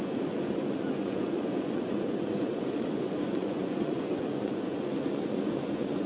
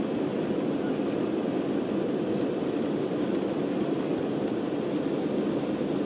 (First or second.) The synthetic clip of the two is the first